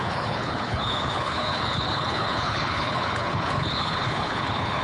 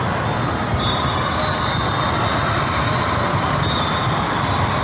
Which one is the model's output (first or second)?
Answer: first